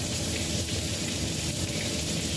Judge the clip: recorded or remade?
remade